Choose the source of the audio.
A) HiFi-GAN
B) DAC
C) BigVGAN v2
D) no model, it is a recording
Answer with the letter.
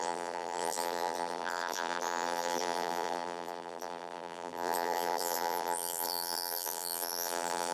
C